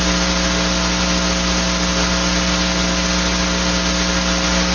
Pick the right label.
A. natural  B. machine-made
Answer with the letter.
A